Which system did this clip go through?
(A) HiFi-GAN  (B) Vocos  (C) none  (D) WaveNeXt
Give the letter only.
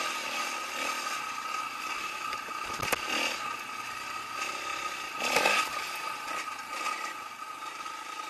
C